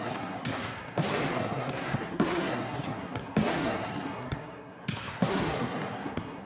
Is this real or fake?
fake